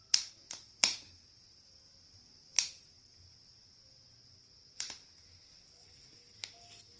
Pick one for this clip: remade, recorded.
recorded